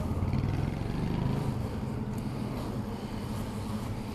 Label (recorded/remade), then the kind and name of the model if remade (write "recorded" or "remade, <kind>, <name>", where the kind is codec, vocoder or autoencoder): recorded